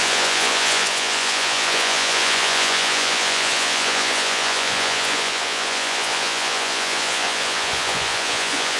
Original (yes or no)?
no